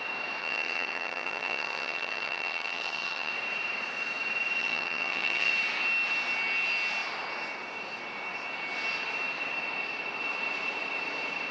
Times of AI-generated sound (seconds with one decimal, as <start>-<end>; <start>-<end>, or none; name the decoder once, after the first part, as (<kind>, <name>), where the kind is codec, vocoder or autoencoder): 0.4-3.3 (vocoder, HiFi-GAN); 4.6-5.5